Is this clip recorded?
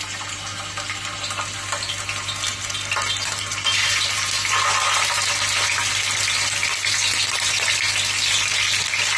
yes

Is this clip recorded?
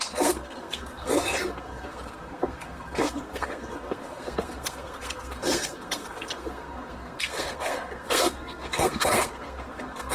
no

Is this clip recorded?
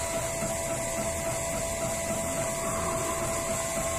yes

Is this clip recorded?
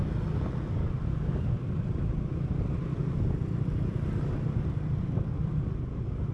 yes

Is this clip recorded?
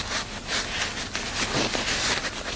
yes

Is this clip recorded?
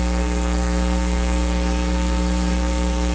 no